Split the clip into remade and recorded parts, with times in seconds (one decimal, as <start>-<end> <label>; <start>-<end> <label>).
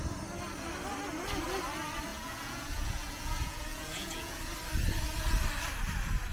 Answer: 0.0-2.1 recorded; 2.1-4.4 remade; 4.4-6.3 recorded